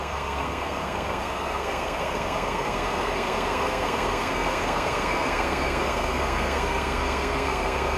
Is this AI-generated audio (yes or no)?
yes